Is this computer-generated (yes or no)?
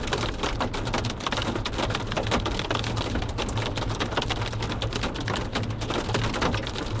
no